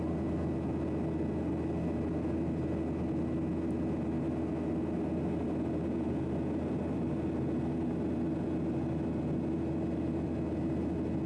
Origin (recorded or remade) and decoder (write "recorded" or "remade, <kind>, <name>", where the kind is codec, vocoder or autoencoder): recorded